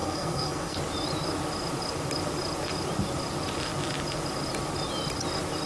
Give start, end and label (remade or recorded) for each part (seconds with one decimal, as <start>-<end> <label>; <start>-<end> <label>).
0.0-0.8 remade; 0.8-5.7 recorded